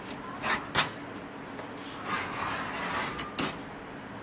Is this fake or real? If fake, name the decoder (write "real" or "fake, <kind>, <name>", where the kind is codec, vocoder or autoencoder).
real